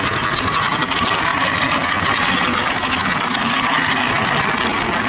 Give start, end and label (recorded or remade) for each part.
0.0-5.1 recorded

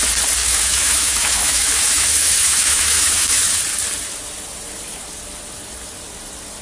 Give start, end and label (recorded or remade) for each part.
0.0-0.4 recorded; 0.4-3.6 remade; 3.6-6.6 recorded

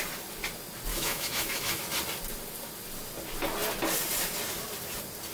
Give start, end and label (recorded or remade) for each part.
0.0-0.9 recorded; 0.9-1.8 remade; 1.8-5.3 recorded

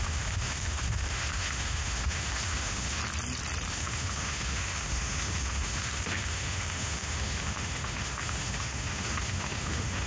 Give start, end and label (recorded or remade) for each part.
0.0-3.0 remade; 3.0-3.7 recorded; 3.7-10.1 remade

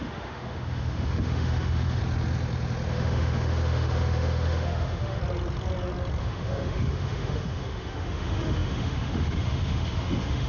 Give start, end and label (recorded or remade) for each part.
0.0-2.0 remade; 2.0-2.9 recorded; 2.9-5.2 remade; 5.2-6.2 recorded; 6.2-10.5 remade

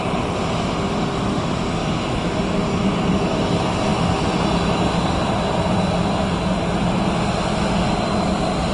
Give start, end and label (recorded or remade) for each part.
0.0-1.8 recorded; 1.8-2.4 remade; 2.4-8.7 recorded

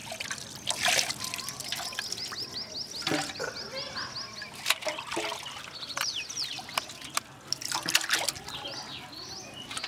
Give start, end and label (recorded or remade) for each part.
0.0-9.9 recorded